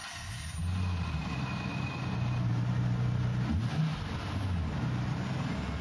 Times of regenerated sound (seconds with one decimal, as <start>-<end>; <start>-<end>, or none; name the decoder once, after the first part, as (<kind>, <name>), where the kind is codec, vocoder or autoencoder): none